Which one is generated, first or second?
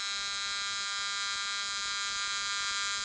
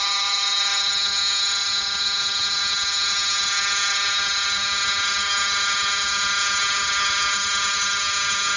second